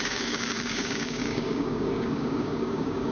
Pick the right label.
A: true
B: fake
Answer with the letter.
B